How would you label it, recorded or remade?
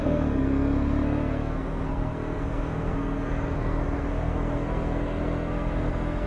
remade